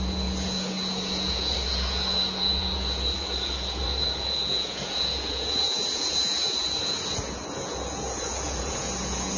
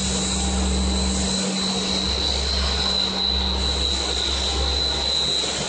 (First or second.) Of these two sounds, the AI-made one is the first